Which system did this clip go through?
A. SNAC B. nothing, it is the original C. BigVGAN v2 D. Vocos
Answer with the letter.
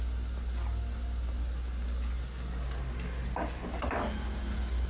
B